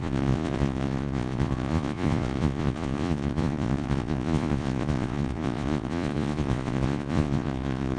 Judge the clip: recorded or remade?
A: remade